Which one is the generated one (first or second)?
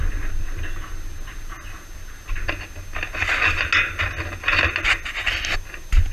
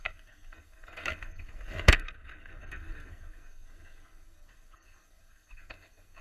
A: second